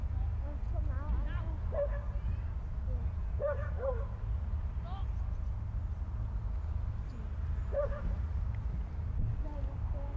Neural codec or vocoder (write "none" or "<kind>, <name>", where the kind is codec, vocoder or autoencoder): none